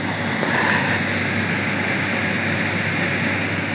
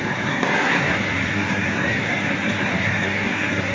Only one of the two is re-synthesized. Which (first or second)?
second